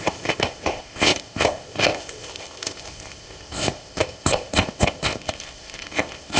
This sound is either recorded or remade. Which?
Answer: remade